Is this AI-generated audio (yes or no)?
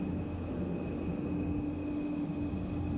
no